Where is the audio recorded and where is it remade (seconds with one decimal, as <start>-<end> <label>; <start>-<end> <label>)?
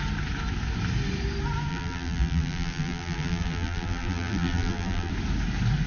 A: 0.0-1.7 recorded; 1.7-5.1 remade; 5.1-5.9 recorded